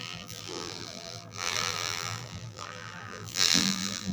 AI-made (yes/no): yes